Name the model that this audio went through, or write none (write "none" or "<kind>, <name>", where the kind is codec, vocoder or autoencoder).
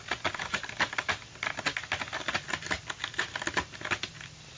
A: none